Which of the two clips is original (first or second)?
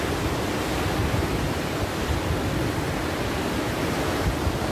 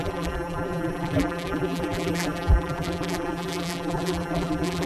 first